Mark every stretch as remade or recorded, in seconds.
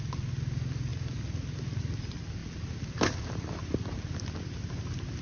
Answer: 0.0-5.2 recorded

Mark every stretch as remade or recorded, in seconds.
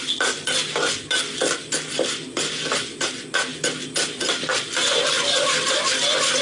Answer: 0.0-6.4 recorded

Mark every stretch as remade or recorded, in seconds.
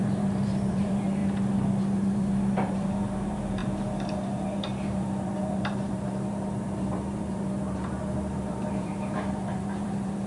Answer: 0.0-1.2 remade; 1.2-1.8 recorded; 1.8-10.3 remade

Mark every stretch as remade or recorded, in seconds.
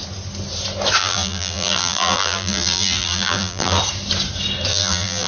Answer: 0.0-1.0 recorded; 1.0-3.8 remade; 3.8-4.7 recorded; 4.7-5.3 remade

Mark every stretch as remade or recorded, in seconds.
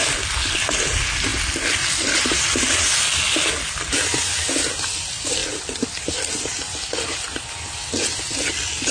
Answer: 0.0-8.9 recorded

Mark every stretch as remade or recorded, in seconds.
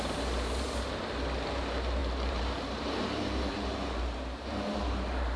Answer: 0.0-2.0 recorded; 2.0-5.4 remade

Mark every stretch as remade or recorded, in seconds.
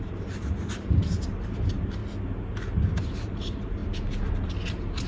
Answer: 0.0-2.0 remade; 2.0-3.0 recorded; 3.0-3.8 remade; 3.8-5.1 recorded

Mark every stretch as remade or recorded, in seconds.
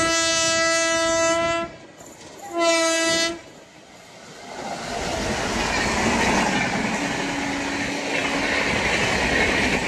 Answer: 0.0-9.9 recorded